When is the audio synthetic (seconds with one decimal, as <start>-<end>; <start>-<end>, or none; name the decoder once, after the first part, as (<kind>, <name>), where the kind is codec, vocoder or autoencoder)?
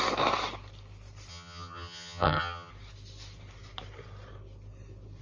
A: 1.3-2.7 (vocoder, HiFi-GAN)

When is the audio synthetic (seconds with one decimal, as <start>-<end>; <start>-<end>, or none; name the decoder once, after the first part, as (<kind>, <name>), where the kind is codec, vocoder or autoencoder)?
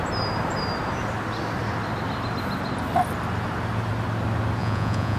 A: 4.6-5.2 (vocoder, Vocos)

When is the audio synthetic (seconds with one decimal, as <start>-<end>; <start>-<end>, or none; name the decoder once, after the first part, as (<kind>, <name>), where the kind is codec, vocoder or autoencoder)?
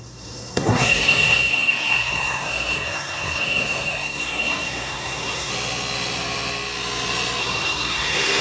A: 0.0-5.5 (codec, SNAC); 7.4-8.4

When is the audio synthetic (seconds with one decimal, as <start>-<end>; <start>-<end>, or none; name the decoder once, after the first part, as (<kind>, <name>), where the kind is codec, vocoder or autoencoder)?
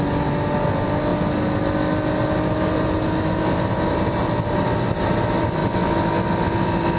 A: none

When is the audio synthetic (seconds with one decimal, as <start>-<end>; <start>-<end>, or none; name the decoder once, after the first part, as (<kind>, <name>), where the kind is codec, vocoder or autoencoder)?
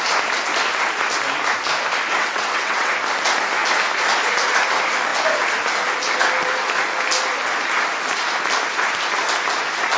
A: 2.2-2.9 (vocoder, WaveNeXt)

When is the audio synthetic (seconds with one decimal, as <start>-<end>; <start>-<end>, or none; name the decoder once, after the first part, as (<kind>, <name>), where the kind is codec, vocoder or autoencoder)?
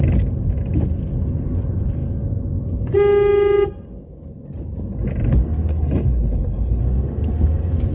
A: 5.7-6.8 (codec, HILCodec)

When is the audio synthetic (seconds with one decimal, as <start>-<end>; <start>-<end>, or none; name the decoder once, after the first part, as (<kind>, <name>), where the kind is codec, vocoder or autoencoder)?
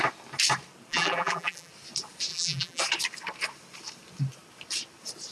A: 0.9-1.7 (vocoder, BigVGAN v2); 2.3-2.8